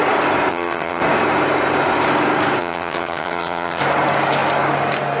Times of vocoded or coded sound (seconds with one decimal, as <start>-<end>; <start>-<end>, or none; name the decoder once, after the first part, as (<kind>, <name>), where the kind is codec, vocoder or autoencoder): 0.5-1.0 (vocoder, HiFi-GAN); 2.6-3.8